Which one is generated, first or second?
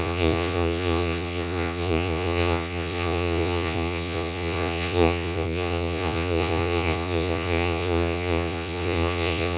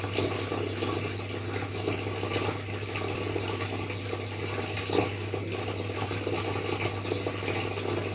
first